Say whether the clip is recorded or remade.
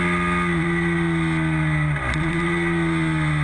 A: recorded